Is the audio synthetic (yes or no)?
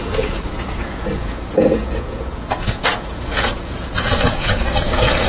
yes